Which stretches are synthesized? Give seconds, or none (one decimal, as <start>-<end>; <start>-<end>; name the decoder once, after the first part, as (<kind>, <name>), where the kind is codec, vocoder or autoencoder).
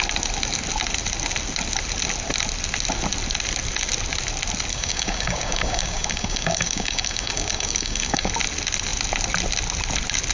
4.7-8.3 (codec, DAC)